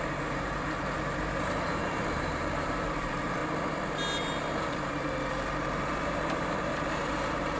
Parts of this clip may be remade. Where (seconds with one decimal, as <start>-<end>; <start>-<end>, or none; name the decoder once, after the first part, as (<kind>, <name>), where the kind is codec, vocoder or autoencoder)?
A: 0.0-3.4 (vocoder, BigVGAN v2); 4.6-7.6